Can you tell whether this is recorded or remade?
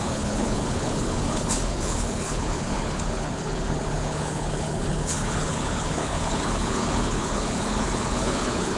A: remade